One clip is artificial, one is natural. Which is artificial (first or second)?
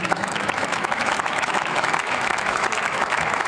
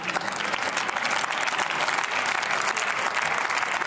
first